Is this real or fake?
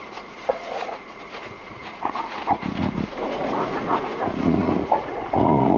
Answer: fake